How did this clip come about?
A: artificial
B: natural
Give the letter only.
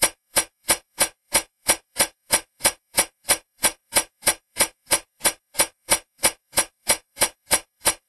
A